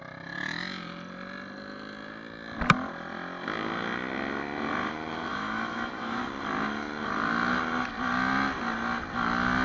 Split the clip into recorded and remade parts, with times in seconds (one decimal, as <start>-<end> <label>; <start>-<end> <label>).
0.0-5.3 recorded; 5.3-6.2 remade; 6.2-9.6 recorded